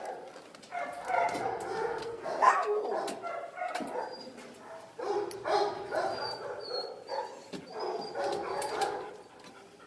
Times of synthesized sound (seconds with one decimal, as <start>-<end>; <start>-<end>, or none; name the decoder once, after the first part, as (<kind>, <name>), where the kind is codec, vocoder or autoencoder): 2.0-2.8 (codec, SNAC)